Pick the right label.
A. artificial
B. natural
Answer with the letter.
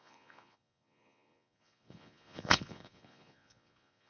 A